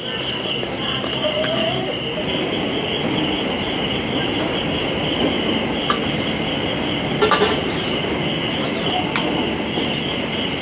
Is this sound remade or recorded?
recorded